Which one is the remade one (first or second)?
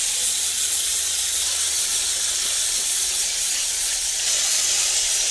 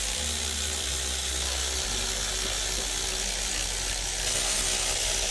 first